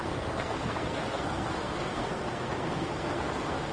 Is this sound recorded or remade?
remade